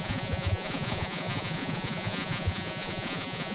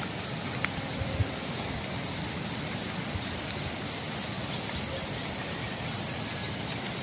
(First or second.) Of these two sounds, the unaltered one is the second